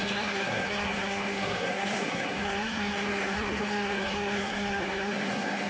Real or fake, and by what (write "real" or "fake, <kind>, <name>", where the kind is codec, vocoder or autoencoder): fake, codec, SNAC